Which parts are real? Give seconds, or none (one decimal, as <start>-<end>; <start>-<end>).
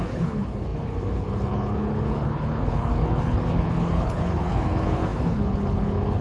none